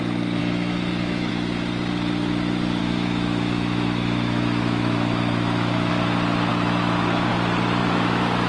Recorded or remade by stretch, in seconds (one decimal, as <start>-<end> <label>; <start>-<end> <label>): 0.0-0.4 recorded; 0.4-1.3 remade; 1.3-2.8 recorded; 2.8-5.9 remade; 5.9-6.5 recorded; 6.5-7.3 remade; 7.3-7.8 recorded; 7.8-8.5 remade